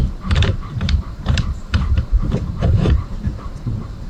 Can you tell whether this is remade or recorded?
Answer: remade